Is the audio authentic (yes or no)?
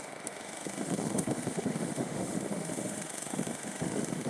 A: no